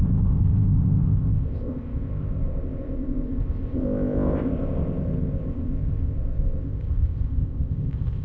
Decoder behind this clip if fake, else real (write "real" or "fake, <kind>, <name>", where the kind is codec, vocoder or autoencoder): fake, codec, ZipCodec